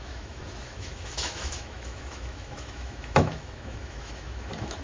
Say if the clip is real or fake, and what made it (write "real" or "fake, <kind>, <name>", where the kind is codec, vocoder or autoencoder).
fake, autoencoder, DAC-VAE